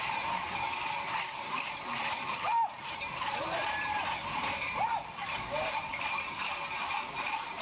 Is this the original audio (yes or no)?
no